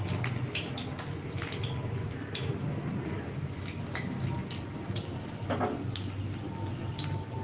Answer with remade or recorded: recorded